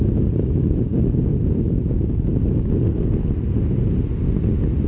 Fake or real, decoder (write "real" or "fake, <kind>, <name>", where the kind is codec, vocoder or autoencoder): real